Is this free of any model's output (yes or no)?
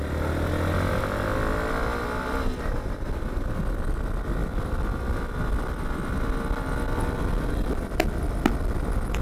yes